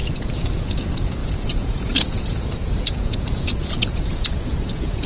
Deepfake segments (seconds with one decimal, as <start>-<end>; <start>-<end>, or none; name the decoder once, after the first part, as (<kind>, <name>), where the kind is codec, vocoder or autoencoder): 0.0-5.1 (vocoder, Vocos)